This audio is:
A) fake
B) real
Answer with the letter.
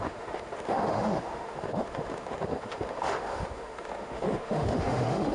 A